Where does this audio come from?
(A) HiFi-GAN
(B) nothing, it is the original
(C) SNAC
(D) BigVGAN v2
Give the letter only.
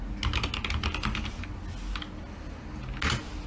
B